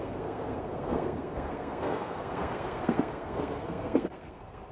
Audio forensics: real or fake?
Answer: fake